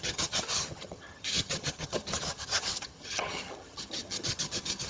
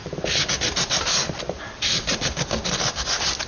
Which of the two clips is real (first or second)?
second